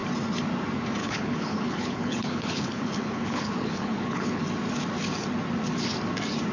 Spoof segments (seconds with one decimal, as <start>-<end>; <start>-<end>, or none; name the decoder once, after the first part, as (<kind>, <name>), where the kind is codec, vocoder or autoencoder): 1.0-4.4 (codec, HILCodec)